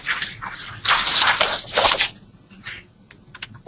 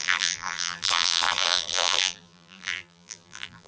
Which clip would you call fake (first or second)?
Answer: second